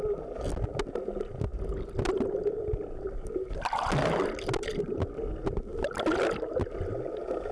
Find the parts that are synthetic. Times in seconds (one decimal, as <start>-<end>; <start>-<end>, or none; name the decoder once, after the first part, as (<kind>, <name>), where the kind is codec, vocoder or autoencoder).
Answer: none